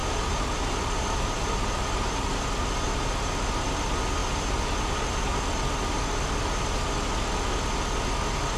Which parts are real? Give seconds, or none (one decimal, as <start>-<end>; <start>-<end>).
3.7-4.2; 5.4-8.6